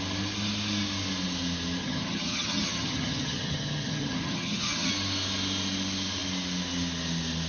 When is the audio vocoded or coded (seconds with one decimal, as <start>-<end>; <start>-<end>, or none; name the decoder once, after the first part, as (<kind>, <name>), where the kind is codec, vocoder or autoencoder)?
1.8-4.9 (vocoder, HiFi-GAN)